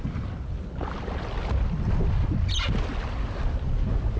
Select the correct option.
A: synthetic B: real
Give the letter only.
B